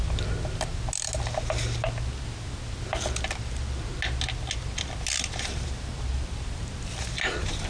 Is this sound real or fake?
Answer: real